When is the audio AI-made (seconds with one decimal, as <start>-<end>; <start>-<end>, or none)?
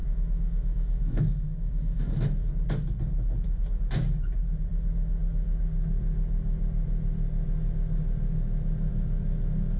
0.0-2.1